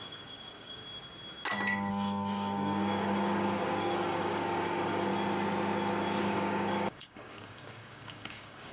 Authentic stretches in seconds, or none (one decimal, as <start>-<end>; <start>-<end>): 0.8-1.9; 5.1-6.2